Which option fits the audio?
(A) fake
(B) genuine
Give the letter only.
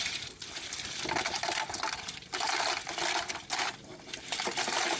B